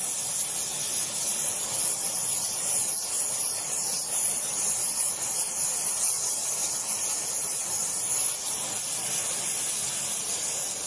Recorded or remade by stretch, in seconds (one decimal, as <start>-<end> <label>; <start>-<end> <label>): 0.0-10.9 recorded